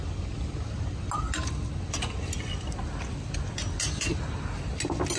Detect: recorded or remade recorded